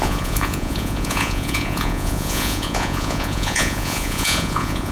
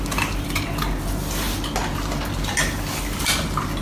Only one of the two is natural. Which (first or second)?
second